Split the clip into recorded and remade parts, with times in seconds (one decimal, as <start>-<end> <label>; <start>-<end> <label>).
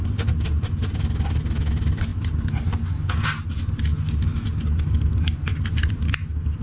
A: 0.0-6.6 recorded